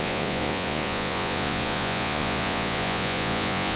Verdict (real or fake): fake